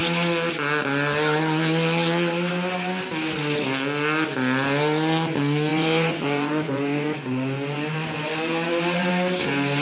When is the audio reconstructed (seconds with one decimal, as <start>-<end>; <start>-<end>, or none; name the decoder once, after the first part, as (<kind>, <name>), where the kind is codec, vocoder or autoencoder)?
5.7-9.1 (vocoder, Vocos)